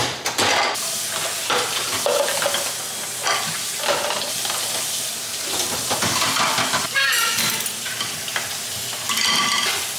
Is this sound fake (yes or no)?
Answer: no